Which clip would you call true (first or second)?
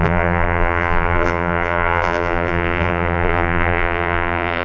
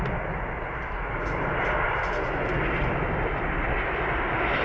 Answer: second